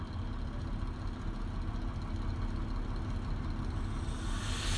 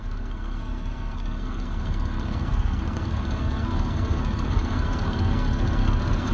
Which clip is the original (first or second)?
first